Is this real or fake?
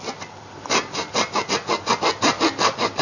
real